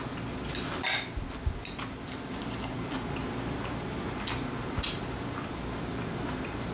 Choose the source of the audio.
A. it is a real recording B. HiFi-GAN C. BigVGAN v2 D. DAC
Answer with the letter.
A